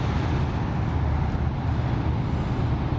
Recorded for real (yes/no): yes